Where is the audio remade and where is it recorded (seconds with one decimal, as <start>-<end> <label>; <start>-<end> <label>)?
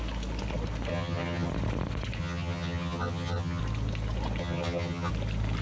0.0-0.9 recorded; 0.9-1.5 remade; 1.5-2.2 recorded; 2.2-3.6 remade; 3.6-4.4 recorded; 4.4-5.1 remade; 5.1-5.6 recorded